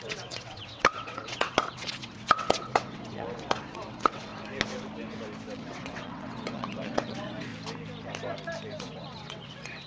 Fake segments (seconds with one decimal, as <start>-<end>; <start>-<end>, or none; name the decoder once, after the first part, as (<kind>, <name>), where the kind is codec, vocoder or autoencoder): 0.0-4.3 (vocoder, WaveNeXt); 5.6-7.5; 8.8-9.9